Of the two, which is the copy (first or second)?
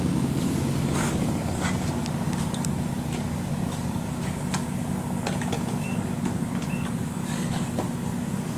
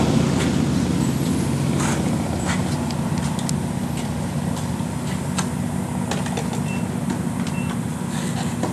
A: first